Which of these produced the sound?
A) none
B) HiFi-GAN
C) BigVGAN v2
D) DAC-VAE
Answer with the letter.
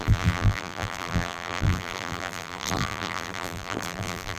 C